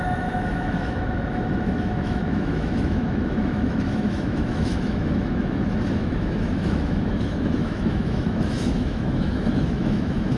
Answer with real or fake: fake